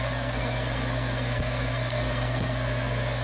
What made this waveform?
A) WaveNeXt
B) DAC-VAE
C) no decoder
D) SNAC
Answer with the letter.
D